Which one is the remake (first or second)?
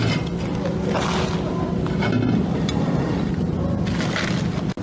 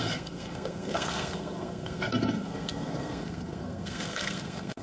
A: second